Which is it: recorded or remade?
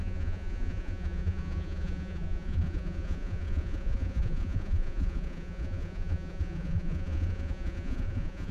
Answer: remade